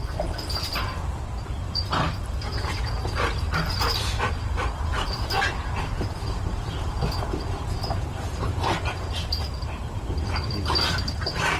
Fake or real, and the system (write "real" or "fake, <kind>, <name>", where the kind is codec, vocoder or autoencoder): fake, vocoder, BigVGAN v2